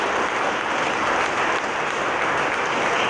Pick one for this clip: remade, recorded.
recorded